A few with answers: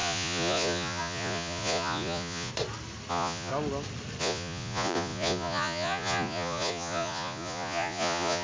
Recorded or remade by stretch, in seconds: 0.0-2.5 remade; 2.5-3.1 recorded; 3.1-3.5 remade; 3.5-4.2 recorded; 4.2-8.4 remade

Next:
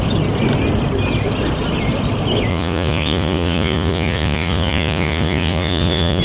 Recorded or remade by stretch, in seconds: 0.0-2.5 recorded; 2.5-6.2 remade

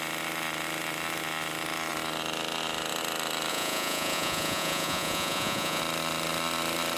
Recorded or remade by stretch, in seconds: 0.0-3.5 recorded; 3.5-5.8 remade; 5.8-7.0 recorded

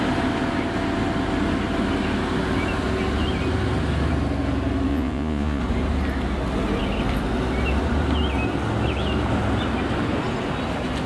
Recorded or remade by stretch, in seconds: 0.0-4.9 recorded; 4.9-5.6 remade; 5.6-11.1 recorded

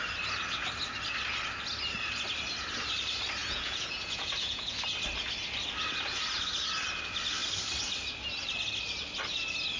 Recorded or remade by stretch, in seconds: 0.0-3.4 recorded; 3.4-4.8 remade; 4.8-9.8 recorded

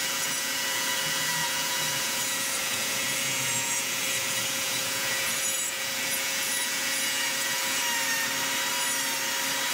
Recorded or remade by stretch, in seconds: 0.0-7.8 remade; 7.8-9.7 recorded